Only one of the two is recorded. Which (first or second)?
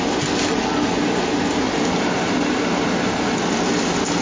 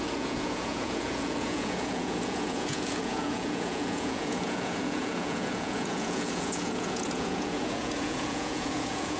first